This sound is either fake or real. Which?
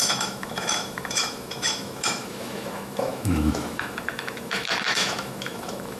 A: fake